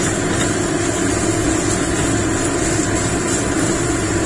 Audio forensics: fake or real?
real